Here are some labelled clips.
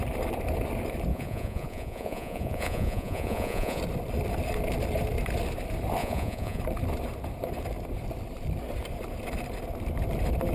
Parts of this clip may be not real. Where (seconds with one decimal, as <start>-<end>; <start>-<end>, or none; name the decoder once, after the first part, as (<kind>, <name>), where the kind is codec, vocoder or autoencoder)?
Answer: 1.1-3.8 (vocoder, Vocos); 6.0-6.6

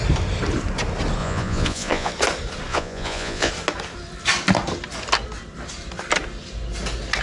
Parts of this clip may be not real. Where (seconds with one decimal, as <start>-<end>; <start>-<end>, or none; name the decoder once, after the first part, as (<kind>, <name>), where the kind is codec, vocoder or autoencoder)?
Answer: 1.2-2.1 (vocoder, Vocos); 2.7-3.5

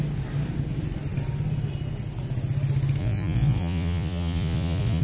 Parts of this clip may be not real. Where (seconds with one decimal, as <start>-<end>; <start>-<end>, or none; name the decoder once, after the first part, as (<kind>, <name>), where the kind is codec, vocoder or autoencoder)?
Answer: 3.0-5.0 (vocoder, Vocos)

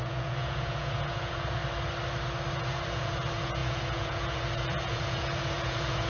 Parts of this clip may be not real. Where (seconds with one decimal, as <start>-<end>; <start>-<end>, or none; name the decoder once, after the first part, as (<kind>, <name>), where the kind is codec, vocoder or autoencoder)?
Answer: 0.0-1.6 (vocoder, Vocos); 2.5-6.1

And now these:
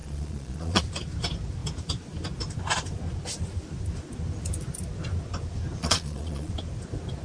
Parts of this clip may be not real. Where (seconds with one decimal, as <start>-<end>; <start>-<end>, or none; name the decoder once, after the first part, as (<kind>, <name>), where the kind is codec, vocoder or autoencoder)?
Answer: 0.0-0.8 (vocoder, Vocos); 5.8-6.5

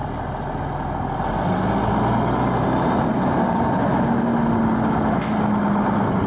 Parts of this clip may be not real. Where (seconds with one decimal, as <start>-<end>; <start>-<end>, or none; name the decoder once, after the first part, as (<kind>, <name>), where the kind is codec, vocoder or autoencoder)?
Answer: none